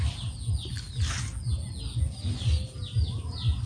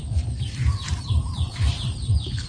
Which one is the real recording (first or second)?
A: first